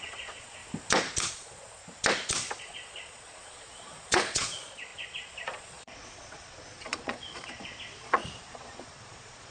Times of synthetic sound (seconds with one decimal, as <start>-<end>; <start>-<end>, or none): 0.0-0.6; 1.3-1.8; 2.6-9.5